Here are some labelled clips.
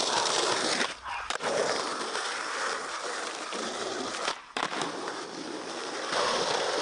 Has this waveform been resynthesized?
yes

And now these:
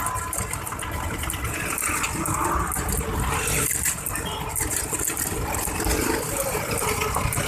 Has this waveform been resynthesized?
no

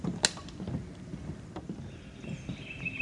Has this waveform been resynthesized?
no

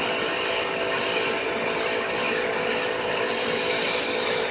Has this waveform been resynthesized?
no